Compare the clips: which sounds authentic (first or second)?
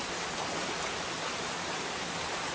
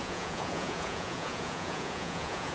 first